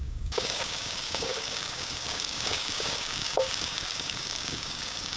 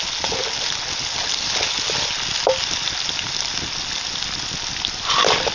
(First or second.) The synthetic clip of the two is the first